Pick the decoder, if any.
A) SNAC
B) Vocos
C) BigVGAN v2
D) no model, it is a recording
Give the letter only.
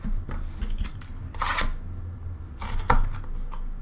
D